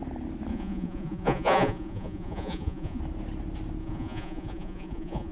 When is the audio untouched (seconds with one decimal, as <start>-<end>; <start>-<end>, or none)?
0.0-0.5; 3.0-3.8